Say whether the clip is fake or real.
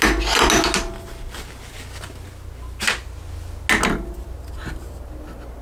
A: real